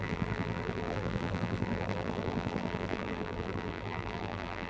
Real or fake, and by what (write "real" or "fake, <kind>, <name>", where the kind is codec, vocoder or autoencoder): fake, vocoder, BigVGAN v2